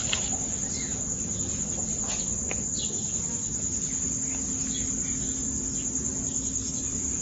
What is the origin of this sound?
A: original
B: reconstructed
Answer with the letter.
A